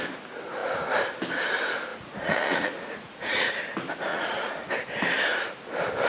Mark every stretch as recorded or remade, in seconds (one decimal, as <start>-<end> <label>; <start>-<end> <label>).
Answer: 0.0-1.9 recorded; 1.9-3.5 remade; 3.5-4.1 recorded; 4.1-4.7 remade; 4.7-6.1 recorded